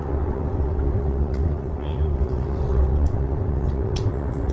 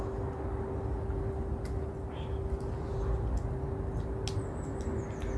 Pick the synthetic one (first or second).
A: first